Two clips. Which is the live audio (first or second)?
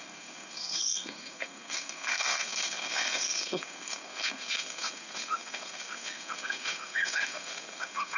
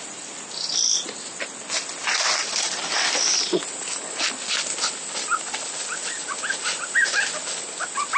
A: second